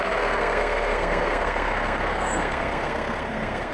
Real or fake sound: fake